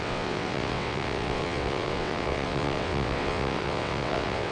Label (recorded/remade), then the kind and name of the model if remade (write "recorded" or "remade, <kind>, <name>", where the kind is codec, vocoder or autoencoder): remade, vocoder, WaveNeXt